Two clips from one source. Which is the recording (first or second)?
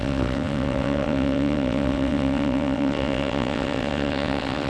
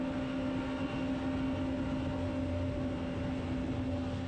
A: second